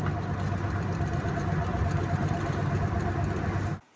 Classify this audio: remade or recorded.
recorded